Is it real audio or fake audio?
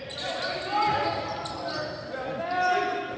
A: real